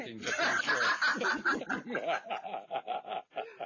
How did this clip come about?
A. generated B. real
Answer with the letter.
B